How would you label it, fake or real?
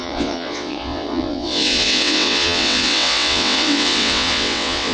fake